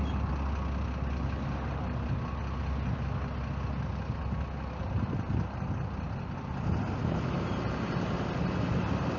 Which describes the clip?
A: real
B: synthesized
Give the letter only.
A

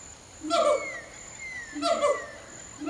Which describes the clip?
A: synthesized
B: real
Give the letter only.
B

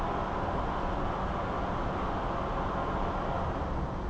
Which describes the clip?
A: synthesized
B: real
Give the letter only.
B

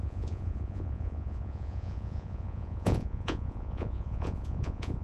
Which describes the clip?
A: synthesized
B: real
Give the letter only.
A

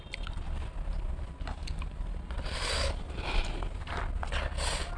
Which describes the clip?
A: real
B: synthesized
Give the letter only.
A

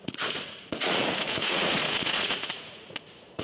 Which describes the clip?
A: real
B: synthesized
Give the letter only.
B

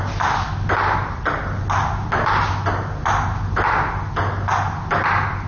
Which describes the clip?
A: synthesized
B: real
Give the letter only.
B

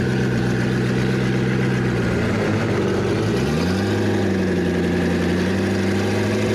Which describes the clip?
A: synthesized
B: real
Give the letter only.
B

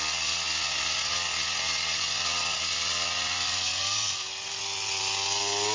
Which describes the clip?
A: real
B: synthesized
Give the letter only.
A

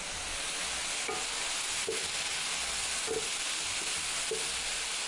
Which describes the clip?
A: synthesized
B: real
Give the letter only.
B